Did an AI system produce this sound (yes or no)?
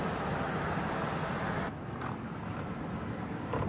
no